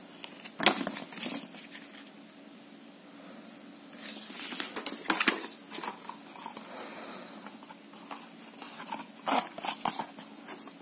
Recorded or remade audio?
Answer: recorded